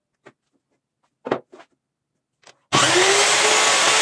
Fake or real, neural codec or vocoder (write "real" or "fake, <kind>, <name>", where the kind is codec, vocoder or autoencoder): real